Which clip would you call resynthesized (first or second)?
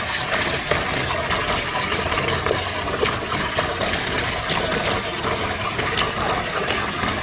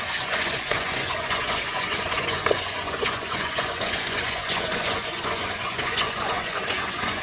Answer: second